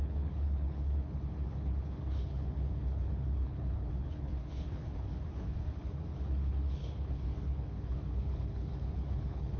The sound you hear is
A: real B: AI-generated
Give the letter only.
B